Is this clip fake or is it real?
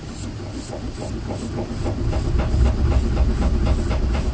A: real